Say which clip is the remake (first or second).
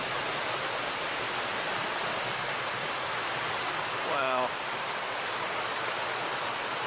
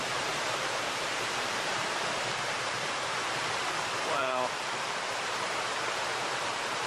second